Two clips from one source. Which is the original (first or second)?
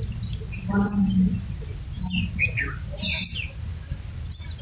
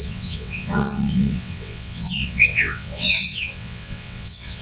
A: first